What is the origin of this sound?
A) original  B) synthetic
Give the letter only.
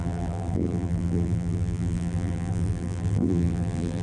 B